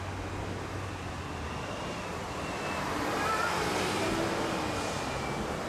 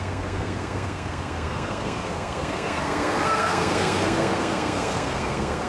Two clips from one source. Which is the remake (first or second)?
second